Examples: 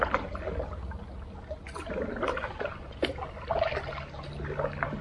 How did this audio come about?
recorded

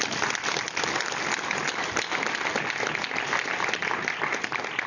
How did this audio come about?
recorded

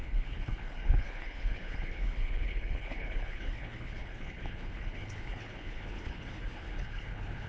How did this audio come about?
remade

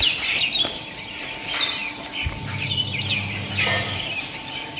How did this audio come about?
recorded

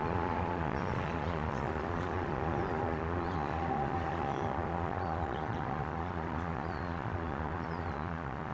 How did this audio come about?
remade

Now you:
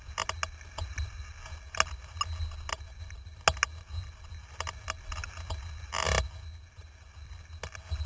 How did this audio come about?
recorded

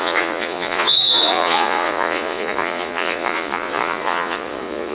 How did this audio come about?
remade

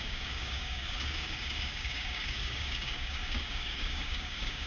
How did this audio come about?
remade